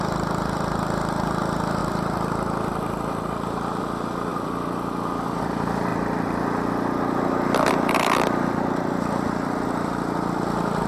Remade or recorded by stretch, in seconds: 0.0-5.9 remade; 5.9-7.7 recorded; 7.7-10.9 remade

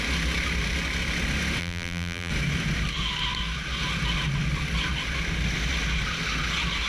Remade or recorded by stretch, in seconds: 0.0-1.6 recorded; 1.6-2.3 remade; 2.3-6.9 recorded

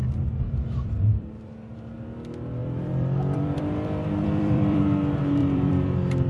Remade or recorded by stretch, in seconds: 0.0-1.5 remade; 1.5-2.6 recorded; 2.6-4.8 remade; 4.8-5.4 recorded; 5.4-6.3 remade